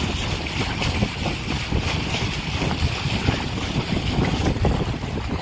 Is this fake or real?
real